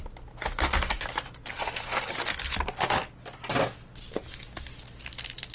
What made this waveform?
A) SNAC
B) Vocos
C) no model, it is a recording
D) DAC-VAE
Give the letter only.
C